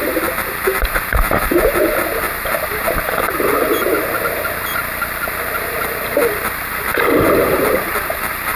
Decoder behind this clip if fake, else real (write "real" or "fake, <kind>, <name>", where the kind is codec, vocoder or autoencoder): real